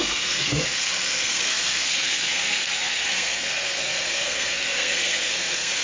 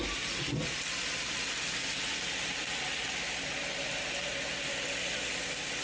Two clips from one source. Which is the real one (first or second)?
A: second